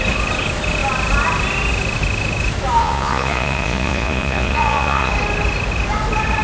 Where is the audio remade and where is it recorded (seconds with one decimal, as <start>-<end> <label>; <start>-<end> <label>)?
0.0-2.8 recorded; 2.8-5.1 remade; 5.1-6.4 recorded